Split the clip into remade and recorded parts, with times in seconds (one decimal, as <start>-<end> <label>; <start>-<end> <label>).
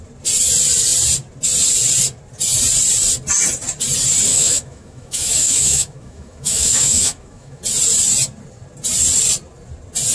0.0-4.3 recorded; 4.3-7.6 remade; 7.6-10.1 recorded